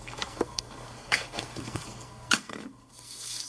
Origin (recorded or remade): remade